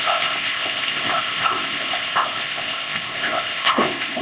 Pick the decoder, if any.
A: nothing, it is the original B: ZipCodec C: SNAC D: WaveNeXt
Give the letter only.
B